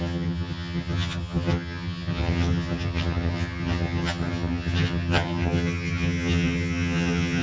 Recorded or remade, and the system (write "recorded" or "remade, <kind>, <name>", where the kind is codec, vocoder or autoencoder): remade, vocoder, HiFi-GAN